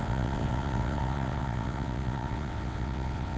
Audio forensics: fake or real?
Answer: fake